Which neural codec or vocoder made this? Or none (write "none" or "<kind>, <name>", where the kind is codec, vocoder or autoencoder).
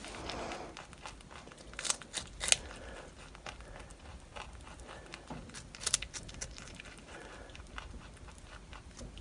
none